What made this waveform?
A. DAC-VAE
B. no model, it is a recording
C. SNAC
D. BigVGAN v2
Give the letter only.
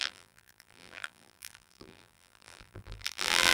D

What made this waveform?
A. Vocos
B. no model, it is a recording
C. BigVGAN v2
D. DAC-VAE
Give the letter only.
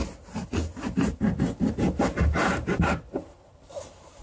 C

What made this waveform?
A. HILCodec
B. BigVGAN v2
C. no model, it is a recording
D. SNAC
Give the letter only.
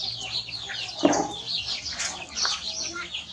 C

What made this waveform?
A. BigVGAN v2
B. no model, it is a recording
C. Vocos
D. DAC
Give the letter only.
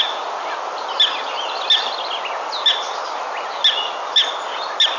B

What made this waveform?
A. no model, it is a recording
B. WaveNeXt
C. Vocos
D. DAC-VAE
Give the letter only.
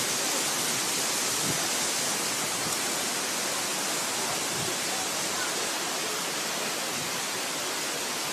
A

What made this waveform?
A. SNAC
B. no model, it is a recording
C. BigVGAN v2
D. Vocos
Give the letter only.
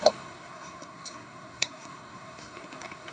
A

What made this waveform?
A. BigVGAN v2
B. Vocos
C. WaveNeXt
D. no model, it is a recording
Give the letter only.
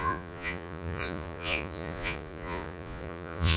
B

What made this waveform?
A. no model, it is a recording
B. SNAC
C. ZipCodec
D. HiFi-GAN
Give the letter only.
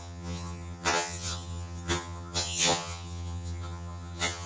D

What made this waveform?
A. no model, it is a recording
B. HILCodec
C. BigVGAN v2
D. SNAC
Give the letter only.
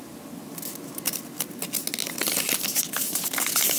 A